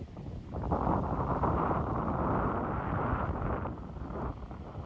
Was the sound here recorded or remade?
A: recorded